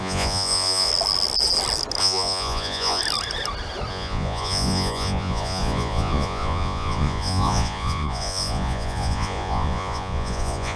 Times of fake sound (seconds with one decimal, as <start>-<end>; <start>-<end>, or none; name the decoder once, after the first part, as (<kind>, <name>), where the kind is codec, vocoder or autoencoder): 0.0-0.9 (vocoder, Vocos); 2.0-3.0; 3.9-10.8